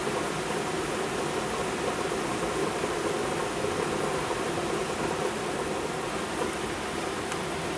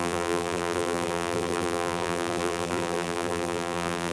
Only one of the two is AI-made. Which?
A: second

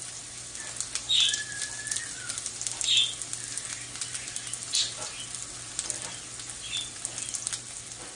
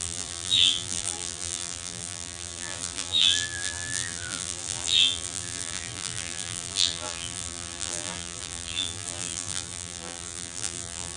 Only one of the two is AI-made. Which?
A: second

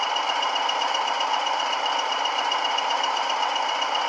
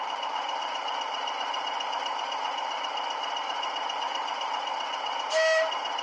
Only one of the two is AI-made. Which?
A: first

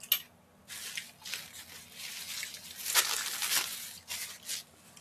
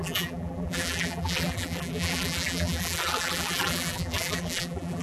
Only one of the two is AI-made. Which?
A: second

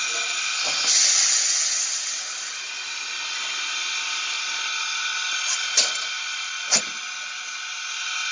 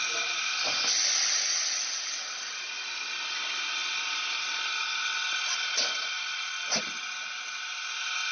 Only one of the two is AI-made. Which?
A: second